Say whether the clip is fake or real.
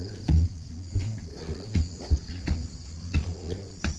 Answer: fake